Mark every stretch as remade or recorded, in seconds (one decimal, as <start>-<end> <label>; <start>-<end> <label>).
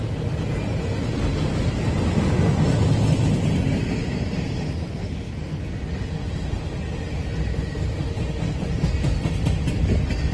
0.0-4.9 recorded; 4.9-5.6 remade; 5.6-10.3 recorded